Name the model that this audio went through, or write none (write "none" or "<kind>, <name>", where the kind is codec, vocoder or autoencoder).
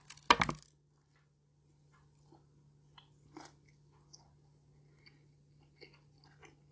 none